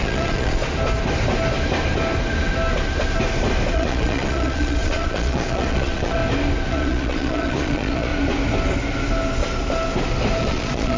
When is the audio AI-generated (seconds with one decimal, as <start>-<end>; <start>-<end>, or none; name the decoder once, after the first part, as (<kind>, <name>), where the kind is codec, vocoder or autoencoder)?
0.0-0.6 (vocoder, Vocos); 3.7-6.2; 6.7-8.1; 10.4-11.0